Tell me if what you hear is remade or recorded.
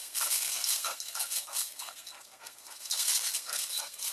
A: remade